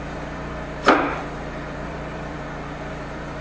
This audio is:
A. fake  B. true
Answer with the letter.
A